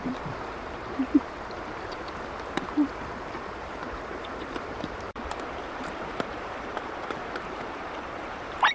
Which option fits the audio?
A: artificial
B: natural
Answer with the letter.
A